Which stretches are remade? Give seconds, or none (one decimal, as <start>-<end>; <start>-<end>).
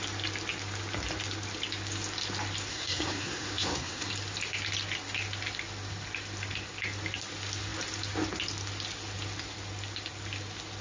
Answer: 2.7-4.1